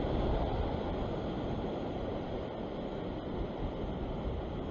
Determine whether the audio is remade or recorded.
recorded